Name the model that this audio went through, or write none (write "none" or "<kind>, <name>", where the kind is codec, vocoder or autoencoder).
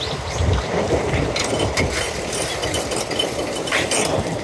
vocoder, BigVGAN v2